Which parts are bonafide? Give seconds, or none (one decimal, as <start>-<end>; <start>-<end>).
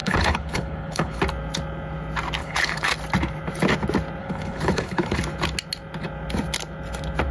1.2-2.4; 2.9-4.2; 5.2-7.3